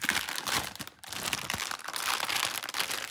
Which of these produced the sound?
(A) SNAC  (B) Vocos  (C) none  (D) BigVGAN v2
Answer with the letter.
C